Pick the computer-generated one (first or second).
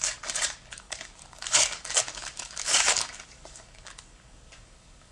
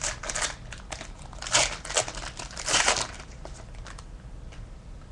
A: first